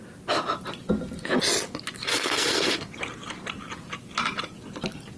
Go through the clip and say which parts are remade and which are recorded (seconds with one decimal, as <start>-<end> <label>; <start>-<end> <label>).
0.0-2.1 recorded; 2.1-2.8 remade; 2.8-5.2 recorded